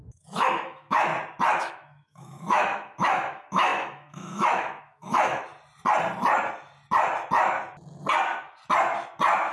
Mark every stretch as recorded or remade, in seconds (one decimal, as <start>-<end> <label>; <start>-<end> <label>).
0.0-1.1 remade; 1.1-1.6 recorded; 1.6-5.5 remade; 5.5-9.5 recorded